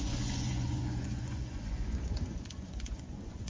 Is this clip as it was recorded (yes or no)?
no